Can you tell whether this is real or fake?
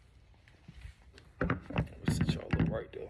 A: real